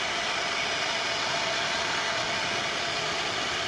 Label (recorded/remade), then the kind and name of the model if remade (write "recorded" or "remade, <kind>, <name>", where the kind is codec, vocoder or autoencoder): recorded